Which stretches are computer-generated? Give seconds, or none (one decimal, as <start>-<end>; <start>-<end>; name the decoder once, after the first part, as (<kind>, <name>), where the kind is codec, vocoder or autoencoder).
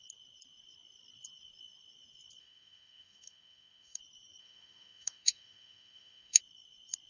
2.4-4.0 (autoencoder, DAC-VAE); 4.4-6.4